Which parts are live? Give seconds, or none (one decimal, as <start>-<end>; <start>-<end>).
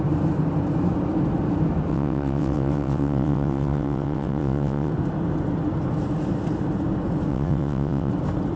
0.0-1.9; 4.9-7.3; 8.1-8.6